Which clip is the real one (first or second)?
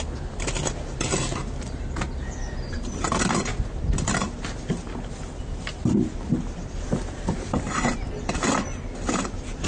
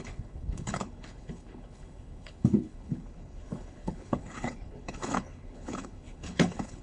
first